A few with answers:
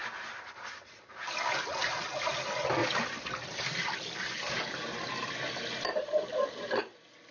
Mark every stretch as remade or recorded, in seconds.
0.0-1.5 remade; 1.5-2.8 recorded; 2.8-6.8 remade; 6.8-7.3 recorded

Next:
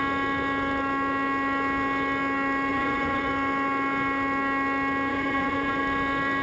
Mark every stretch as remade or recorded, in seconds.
0.0-2.7 recorded; 2.7-3.3 remade; 3.3-5.1 recorded; 5.1-5.8 remade; 5.8-6.4 recorded

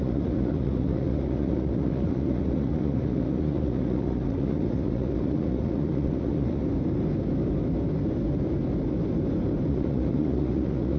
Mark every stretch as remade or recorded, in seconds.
0.0-6.6 remade; 6.6-9.7 recorded; 9.7-11.0 remade

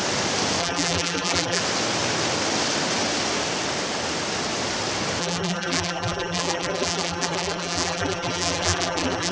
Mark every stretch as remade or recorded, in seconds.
0.0-0.6 recorded; 0.6-1.6 remade; 1.6-5.2 recorded; 5.2-9.3 remade

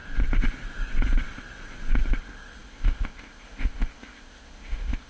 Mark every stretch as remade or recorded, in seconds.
0.0-2.2 recorded; 2.2-5.1 remade